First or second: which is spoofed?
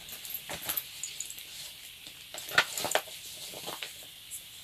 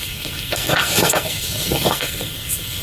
second